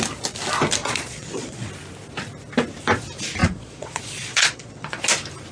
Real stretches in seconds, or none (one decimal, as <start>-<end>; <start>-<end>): 0.0-0.8; 1.7-3.4; 5.0-5.5